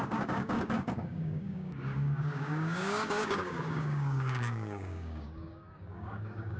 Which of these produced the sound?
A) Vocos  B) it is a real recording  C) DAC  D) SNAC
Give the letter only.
C